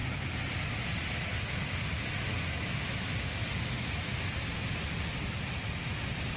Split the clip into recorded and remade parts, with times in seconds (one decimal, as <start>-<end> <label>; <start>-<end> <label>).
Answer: 0.0-6.4 recorded